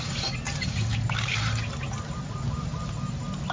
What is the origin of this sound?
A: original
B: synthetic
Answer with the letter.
A